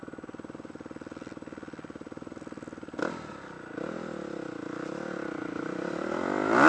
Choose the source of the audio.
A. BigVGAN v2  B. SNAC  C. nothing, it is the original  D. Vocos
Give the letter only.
C